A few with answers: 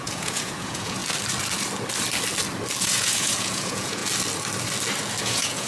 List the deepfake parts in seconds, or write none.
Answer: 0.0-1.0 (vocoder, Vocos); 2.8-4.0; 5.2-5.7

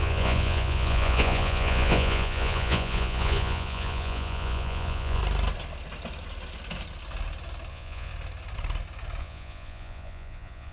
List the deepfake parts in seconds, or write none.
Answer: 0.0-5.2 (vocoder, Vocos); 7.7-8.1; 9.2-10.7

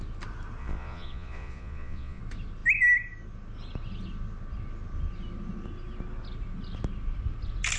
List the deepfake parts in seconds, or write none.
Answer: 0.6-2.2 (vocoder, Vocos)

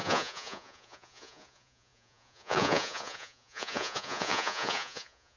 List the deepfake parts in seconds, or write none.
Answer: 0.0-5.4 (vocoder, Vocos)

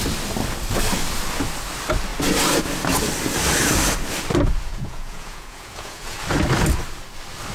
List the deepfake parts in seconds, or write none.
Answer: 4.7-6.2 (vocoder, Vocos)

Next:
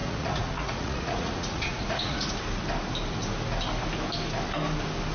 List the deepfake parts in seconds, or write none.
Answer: 0.0-2.3 (vocoder, Vocos)

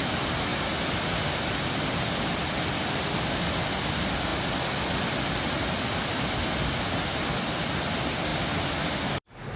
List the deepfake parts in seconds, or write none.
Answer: none

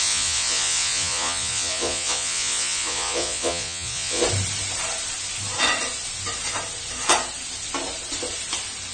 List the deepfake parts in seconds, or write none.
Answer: 0.0-4.2 (vocoder, Vocos)